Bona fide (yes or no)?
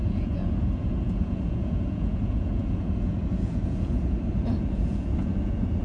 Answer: no